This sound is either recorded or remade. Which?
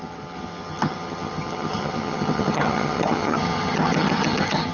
remade